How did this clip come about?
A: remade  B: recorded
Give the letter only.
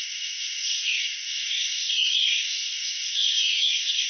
A